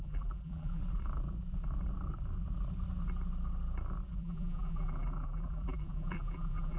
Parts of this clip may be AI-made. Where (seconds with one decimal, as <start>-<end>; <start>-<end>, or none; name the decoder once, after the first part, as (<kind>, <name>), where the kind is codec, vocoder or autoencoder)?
0.0-0.8 (vocoder, BigVGAN v2); 4.2-6.8